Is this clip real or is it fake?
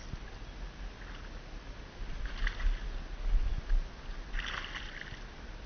real